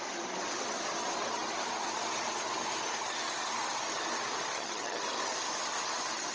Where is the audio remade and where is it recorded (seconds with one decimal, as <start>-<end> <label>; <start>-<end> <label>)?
0.0-4.5 recorded; 4.5-5.0 remade; 5.0-6.3 recorded